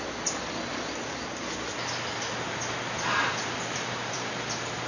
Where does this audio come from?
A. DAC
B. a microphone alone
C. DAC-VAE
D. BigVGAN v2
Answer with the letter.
B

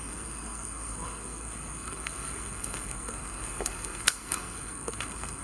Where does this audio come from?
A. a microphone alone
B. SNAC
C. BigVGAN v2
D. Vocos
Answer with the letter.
B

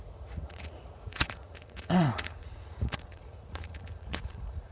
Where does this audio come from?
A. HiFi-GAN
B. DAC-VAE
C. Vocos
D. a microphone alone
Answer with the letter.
C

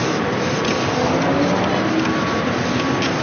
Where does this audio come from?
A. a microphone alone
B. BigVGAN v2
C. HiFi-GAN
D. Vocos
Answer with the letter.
A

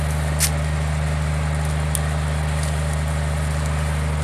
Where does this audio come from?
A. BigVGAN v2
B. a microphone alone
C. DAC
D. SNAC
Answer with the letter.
B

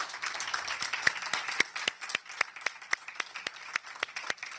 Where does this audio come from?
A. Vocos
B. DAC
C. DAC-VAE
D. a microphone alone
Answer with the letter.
D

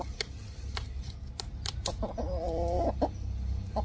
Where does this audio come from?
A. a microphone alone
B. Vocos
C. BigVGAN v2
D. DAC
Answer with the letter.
A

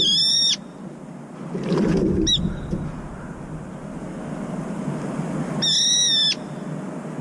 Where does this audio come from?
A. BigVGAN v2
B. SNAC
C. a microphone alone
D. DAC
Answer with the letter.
C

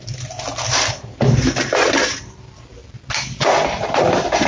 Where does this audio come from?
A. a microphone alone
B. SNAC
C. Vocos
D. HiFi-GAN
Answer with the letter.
A